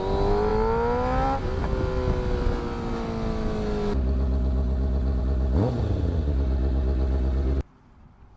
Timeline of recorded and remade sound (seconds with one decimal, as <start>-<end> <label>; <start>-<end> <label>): 0.0-8.4 recorded